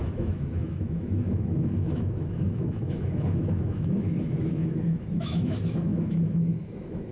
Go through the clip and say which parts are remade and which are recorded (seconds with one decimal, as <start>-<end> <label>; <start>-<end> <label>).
0.0-7.1 remade